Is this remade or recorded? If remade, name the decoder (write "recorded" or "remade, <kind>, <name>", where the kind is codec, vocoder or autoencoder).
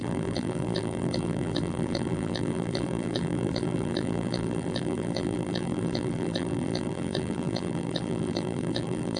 remade, vocoder, BigVGAN v2